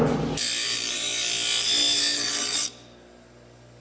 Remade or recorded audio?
recorded